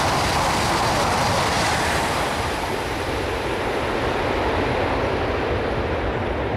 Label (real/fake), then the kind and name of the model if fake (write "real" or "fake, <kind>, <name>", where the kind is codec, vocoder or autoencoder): real